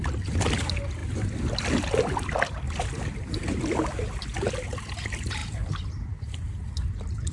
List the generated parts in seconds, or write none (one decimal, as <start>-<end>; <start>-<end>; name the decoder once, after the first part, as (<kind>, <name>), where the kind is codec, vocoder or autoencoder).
none